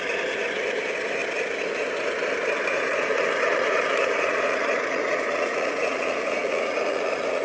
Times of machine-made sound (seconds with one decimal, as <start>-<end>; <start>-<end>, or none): 2.7-7.4